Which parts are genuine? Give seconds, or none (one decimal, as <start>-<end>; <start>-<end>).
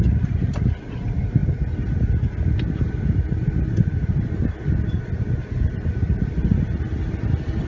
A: 0.0-7.7